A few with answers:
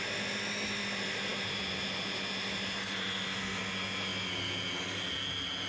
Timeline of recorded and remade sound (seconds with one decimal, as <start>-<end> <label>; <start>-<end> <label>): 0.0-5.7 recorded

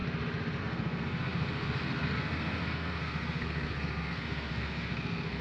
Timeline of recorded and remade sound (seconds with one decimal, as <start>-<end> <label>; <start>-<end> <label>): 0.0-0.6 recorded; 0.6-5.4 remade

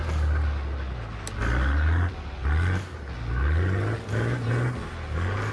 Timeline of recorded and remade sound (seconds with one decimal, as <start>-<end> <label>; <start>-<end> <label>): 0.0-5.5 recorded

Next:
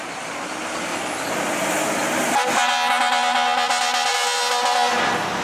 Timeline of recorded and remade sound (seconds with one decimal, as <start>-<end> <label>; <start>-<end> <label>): 0.0-5.4 recorded

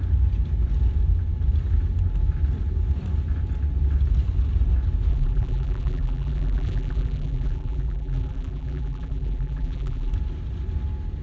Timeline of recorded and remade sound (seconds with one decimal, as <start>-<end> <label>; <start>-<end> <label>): 0.0-5.1 recorded; 5.1-10.1 remade; 10.1-11.2 recorded

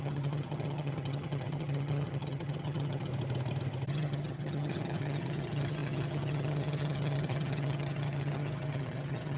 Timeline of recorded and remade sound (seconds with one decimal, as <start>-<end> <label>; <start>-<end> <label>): 0.0-3.1 remade; 3.1-3.9 recorded; 3.9-9.4 remade

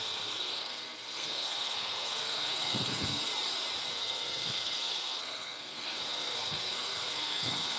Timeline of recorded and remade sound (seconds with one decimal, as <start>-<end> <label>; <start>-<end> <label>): 0.0-3.3 remade; 3.3-3.9 recorded; 3.9-7.8 remade

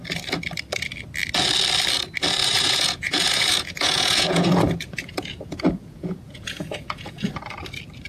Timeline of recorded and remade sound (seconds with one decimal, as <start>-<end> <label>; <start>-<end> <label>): 0.0-2.4 recorded; 2.4-7.3 remade; 7.3-8.1 recorded